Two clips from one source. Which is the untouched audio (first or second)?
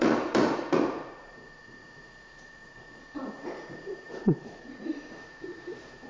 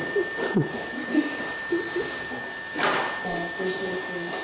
second